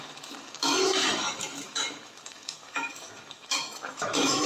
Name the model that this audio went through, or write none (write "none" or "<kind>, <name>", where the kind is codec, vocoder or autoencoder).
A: autoencoder, DAC-VAE